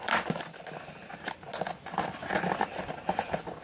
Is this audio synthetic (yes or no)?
no